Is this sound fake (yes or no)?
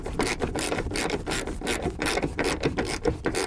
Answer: yes